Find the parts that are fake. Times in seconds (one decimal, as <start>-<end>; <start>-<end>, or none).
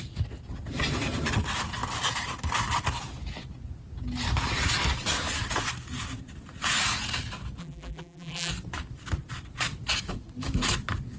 7.6-8.5